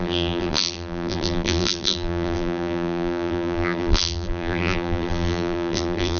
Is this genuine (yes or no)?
no